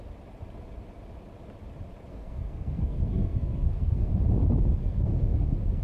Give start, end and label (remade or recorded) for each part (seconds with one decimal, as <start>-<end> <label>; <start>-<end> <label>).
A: 0.0-2.1 recorded; 2.1-4.1 remade; 4.1-4.8 recorded; 4.8-5.8 remade